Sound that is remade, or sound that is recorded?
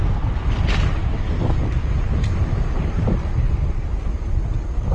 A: recorded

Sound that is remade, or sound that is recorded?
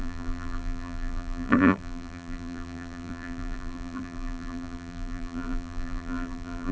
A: remade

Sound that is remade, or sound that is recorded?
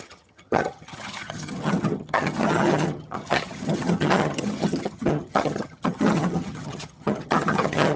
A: remade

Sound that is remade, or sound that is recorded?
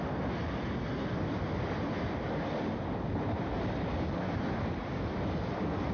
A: recorded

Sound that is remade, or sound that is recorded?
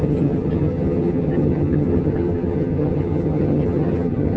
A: remade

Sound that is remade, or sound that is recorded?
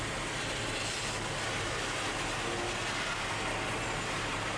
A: recorded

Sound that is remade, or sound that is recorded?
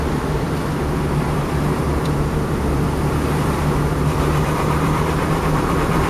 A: remade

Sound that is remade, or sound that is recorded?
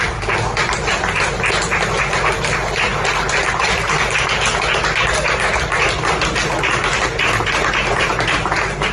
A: recorded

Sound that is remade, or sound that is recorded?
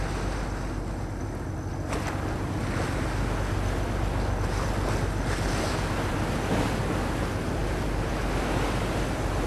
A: recorded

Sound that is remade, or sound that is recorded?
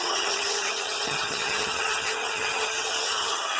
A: remade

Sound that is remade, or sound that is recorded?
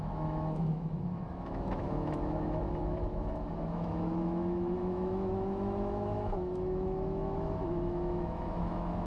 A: remade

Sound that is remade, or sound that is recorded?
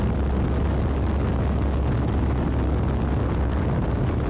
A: recorded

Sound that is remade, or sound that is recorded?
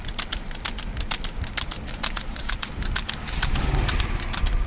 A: recorded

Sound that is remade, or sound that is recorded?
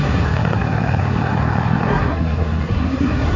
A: remade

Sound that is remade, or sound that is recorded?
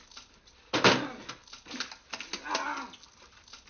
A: recorded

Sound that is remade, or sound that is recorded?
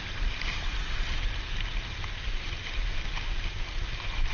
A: recorded